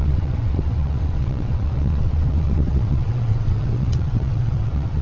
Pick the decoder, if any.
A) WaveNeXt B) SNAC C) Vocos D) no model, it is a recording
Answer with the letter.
A